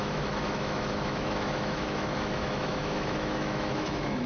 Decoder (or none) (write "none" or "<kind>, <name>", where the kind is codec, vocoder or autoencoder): autoencoder, DAC-VAE